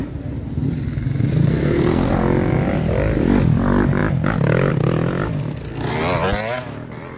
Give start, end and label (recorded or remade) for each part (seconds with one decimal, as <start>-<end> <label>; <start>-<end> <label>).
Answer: 0.0-1.4 recorded; 1.4-2.1 remade; 2.1-7.2 recorded